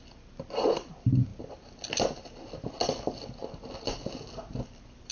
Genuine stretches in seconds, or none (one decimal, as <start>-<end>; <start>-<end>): 0.0-1.3; 2.2-5.1